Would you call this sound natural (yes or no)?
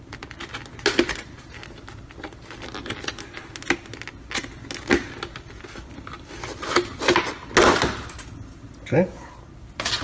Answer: yes